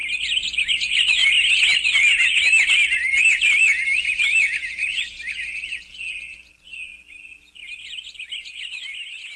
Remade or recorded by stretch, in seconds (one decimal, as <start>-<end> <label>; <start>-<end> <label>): 0.0-9.4 recorded